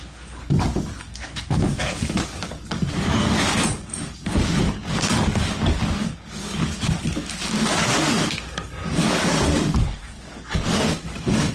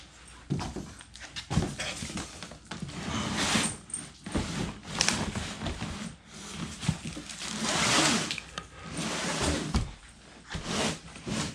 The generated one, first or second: first